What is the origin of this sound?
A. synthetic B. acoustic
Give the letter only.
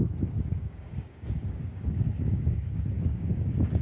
A